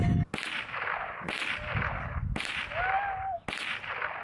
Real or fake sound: real